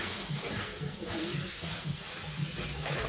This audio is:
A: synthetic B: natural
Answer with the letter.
A